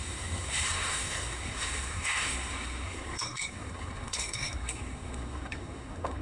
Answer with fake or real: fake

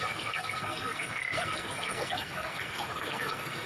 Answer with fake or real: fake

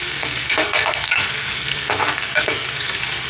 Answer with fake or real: fake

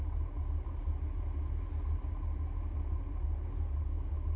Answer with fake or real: real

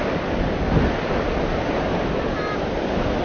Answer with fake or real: real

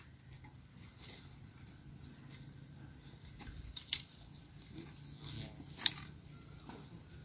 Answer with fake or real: real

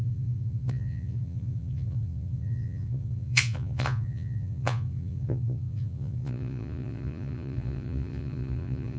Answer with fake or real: fake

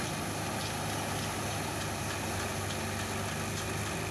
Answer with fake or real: real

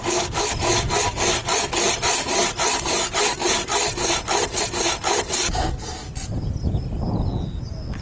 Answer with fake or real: real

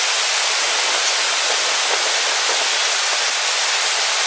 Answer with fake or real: real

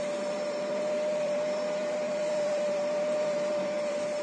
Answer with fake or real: fake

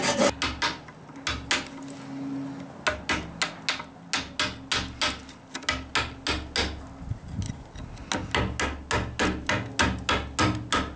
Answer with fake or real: real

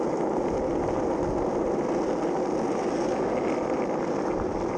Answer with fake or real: real